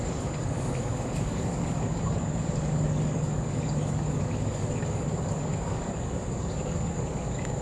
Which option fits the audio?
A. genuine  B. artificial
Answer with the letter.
B